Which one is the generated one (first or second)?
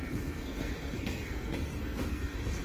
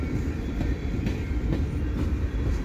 first